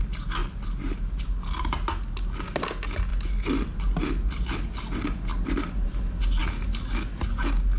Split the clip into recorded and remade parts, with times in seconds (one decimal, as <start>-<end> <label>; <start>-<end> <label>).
0.0-0.4 recorded; 0.4-1.2 remade; 1.2-5.3 recorded; 5.3-6.0 remade; 6.0-7.8 recorded